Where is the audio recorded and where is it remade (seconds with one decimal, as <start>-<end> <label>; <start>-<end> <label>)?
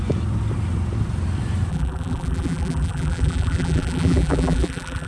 0.0-1.7 recorded; 1.7-5.1 remade